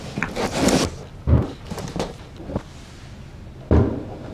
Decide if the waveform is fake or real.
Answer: real